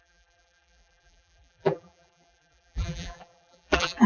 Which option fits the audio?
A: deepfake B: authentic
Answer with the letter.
A